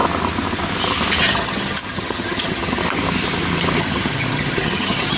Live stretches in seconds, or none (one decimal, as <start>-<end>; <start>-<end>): 0.0-1.2; 2.8-3.8